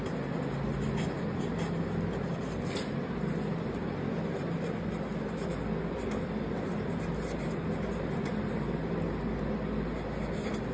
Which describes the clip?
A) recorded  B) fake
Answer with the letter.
A